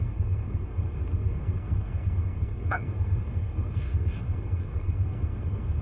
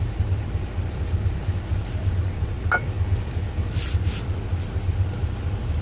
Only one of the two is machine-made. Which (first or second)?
first